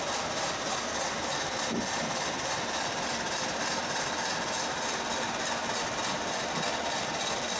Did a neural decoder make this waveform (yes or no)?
no